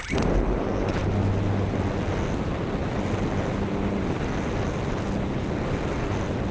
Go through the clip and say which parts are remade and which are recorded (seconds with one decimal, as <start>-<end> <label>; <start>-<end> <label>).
0.0-6.5 recorded